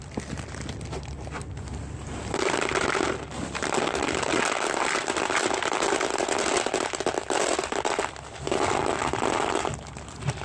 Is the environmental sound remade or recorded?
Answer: remade